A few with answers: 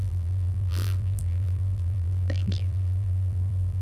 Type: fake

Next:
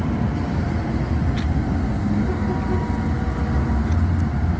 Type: real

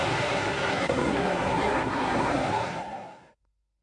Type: fake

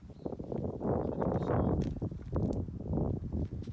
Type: real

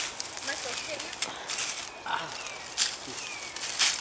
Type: real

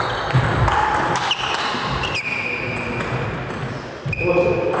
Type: real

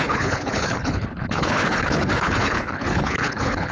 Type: fake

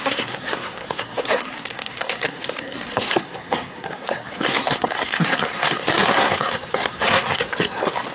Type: fake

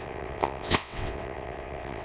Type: fake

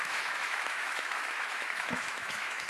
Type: fake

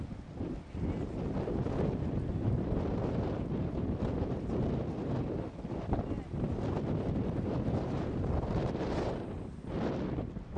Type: real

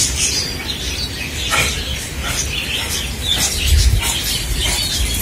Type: real